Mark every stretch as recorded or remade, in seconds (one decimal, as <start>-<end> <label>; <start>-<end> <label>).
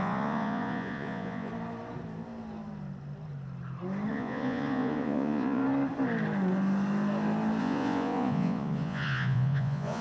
0.0-1.5 remade; 1.5-4.1 recorded; 4.1-5.6 remade; 5.6-7.6 recorded; 7.6-10.0 remade